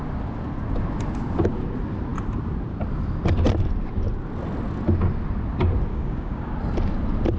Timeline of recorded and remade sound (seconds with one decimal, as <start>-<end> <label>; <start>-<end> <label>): 0.0-5.9 recorded; 5.9-6.5 remade; 6.5-7.4 recorded